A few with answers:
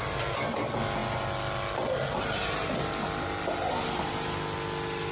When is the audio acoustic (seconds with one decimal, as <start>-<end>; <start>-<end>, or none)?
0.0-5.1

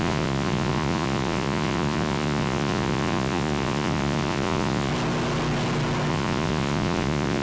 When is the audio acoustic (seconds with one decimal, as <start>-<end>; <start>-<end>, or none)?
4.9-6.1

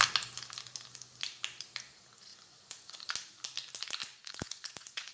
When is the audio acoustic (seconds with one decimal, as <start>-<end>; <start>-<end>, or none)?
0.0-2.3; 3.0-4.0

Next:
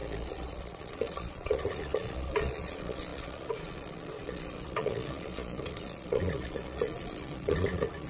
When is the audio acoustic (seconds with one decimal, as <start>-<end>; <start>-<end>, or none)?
none